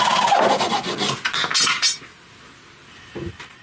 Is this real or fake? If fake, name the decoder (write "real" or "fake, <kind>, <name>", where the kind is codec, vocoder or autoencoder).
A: real